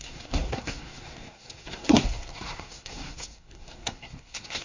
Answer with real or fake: fake